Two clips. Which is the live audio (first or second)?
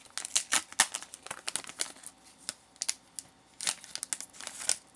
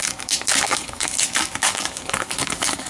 first